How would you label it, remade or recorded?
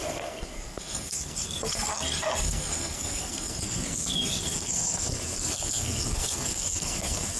remade